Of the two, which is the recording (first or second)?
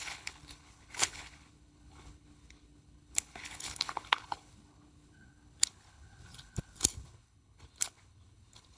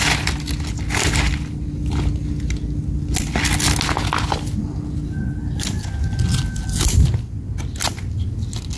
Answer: second